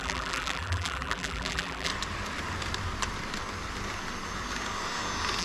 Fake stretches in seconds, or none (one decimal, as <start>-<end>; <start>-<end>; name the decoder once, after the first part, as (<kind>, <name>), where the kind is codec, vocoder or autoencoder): 0.0-1.9 (vocoder, BigVGAN v2)